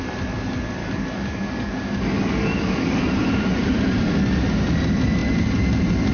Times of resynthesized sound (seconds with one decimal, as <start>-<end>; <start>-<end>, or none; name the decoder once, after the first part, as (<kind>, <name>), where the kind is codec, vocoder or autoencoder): 0.8-3.0 (codec, DAC)